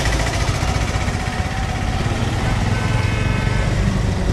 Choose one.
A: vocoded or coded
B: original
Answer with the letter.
B